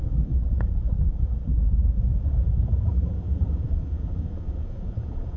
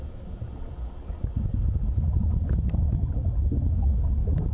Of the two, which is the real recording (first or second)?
second